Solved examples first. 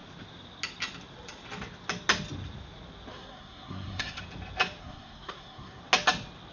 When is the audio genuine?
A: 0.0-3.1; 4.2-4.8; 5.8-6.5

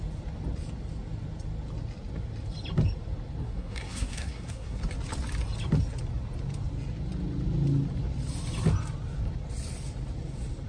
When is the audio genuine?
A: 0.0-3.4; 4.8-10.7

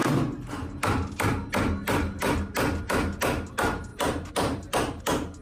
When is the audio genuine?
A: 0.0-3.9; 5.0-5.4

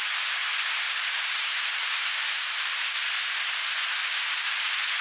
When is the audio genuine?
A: 0.0-5.0

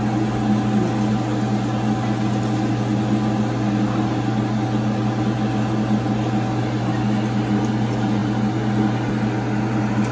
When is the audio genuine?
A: 0.0-10.1

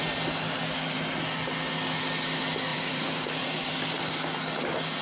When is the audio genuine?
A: 0.0-2.7; 3.7-5.0

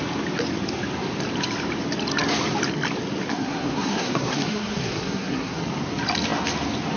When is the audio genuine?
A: 0.0-3.3; 5.6-7.0